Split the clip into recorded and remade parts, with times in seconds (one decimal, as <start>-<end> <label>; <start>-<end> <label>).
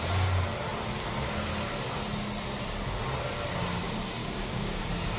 0.0-4.2 recorded; 4.2-4.8 remade; 4.8-5.2 recorded